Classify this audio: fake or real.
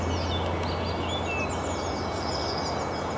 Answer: real